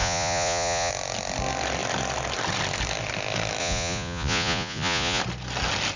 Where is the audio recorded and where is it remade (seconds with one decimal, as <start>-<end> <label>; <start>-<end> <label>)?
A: 0.0-0.9 remade; 0.9-3.6 recorded; 3.6-5.2 remade; 5.2-6.0 recorded